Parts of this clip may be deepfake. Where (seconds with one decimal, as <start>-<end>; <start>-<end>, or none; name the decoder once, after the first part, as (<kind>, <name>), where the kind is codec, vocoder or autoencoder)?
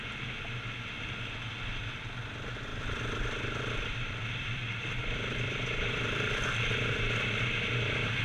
2.7-6.9 (vocoder, BigVGAN v2)